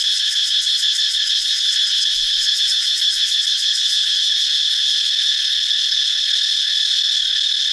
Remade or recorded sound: remade